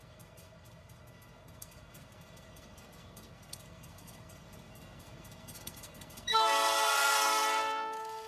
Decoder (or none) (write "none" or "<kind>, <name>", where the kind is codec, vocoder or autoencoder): codec, SNAC